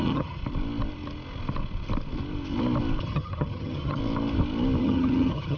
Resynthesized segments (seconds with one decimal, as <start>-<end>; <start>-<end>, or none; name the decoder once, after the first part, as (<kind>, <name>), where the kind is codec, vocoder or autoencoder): 0.0-0.4 (vocoder, HiFi-GAN); 3.0-4.0; 4.8-5.6